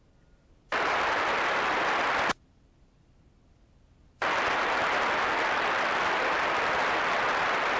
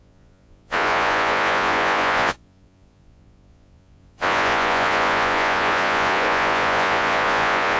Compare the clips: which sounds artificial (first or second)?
second